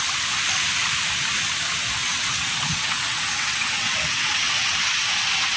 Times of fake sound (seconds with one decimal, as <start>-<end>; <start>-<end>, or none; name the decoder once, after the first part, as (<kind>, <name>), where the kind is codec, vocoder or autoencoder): 2.0-5.6 (vocoder, WaveNeXt)